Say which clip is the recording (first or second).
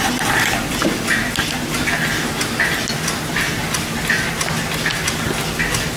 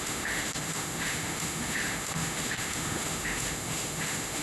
first